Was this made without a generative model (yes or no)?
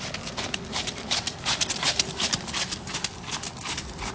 yes